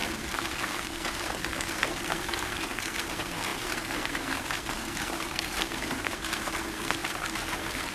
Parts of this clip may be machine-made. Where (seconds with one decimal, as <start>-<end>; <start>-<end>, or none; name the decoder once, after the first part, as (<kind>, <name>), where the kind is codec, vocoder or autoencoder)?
0.0-7.9 (codec, SNAC)